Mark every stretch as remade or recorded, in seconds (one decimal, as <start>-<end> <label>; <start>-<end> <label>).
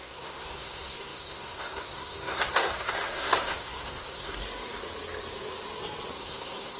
0.0-4.4 remade; 4.4-6.1 recorded; 6.1-6.8 remade